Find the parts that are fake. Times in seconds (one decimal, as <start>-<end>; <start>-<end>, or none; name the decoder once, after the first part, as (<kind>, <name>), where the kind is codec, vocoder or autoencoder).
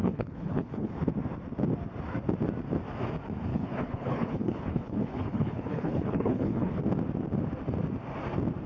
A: 0.0-1.0 (codec, HILCodec); 3.5-6.8